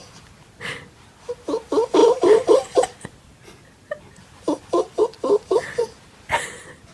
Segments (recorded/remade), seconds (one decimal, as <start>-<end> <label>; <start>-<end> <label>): 0.0-0.7 remade; 0.7-2.0 recorded; 2.0-6.0 remade; 6.0-6.9 recorded